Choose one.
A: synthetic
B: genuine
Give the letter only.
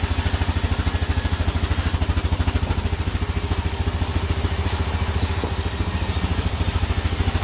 B